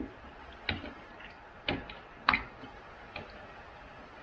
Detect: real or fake real